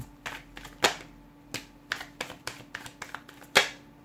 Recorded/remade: recorded